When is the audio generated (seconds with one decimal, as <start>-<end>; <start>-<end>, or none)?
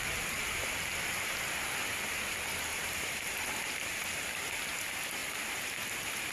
2.7-4.3